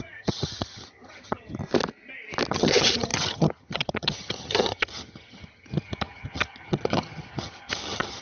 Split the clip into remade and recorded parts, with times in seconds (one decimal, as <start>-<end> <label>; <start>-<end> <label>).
0.0-1.6 remade; 1.6-2.5 recorded; 2.5-8.2 remade